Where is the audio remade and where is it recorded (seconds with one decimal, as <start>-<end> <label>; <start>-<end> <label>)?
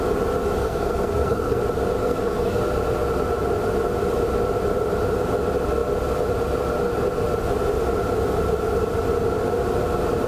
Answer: 0.0-0.6 recorded; 0.6-1.6 remade; 1.6-2.0 recorded; 2.0-2.6 remade; 2.6-10.3 recorded